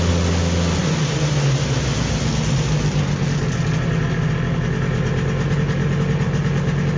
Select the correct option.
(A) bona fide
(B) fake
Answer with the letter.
A